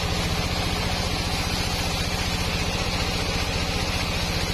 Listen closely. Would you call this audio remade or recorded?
recorded